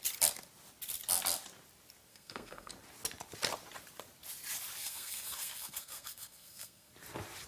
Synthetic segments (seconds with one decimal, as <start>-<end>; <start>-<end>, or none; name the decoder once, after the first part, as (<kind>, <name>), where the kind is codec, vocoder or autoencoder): 2.1-2.7 (codec, SNAC); 4.8-6.9

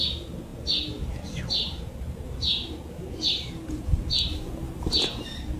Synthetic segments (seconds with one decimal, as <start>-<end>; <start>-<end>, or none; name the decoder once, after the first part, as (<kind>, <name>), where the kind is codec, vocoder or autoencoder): none

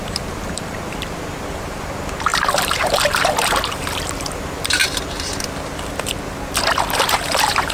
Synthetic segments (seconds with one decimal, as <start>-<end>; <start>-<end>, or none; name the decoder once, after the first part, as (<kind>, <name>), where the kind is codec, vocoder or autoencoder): 0.0-4.8 (vocoder, BigVGAN v2); 6.8-7.7

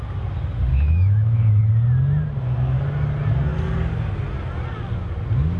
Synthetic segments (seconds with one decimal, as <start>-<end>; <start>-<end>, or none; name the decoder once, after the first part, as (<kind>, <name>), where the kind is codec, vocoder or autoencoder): 0.7-1.6 (autoencoder, DAC-VAE)

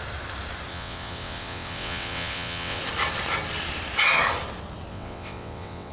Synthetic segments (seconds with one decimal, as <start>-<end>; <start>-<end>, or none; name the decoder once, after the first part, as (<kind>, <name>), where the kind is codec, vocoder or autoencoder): 0.7-2.8 (vocoder, WaveNeXt); 4.9-5.9

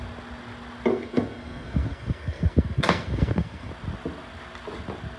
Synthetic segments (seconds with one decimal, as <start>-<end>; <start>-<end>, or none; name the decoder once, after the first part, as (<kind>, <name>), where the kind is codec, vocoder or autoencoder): 0.9-3.7 (codec, SNAC)